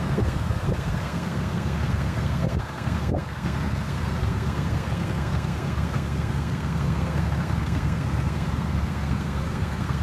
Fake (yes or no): yes